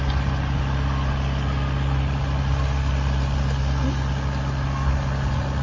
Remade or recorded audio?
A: recorded